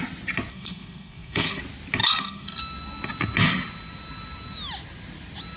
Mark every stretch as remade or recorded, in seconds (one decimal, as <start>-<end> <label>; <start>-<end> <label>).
0.0-0.5 recorded; 0.5-1.6 remade; 1.6-2.0 recorded; 2.0-2.6 remade; 2.6-5.6 recorded